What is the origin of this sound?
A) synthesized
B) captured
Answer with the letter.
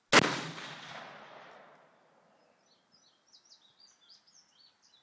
B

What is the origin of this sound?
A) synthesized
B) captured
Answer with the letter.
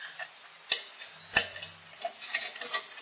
B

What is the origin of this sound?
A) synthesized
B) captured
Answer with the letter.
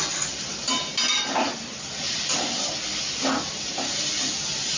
B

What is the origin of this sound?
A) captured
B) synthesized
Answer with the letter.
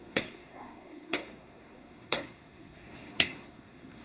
B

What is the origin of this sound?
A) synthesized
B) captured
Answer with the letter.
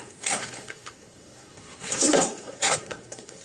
A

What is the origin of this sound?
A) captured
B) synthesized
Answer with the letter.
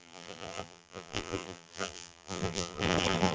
B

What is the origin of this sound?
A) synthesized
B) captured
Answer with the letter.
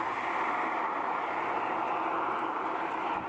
B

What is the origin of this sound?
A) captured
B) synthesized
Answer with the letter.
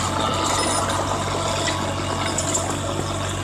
A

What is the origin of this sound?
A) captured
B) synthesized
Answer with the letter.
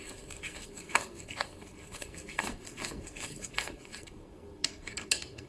B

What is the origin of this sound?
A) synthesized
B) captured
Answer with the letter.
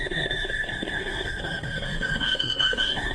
A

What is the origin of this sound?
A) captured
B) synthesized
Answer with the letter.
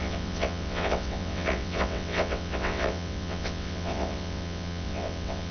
B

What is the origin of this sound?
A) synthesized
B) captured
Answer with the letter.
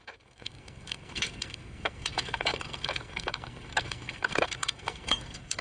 A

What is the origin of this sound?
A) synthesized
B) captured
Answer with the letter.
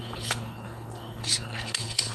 A